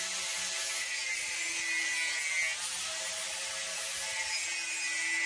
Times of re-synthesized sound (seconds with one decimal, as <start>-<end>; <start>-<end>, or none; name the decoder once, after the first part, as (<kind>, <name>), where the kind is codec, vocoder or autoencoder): none